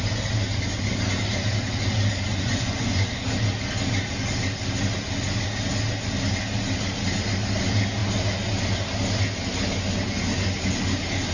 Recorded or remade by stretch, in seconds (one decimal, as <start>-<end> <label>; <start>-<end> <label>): 0.0-2.3 recorded; 2.3-3.1 remade; 3.1-11.3 recorded